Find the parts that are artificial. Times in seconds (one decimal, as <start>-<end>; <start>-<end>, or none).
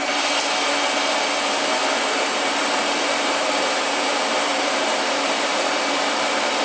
1.8-5.8